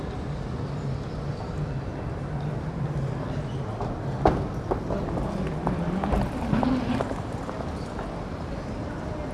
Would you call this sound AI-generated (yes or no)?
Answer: no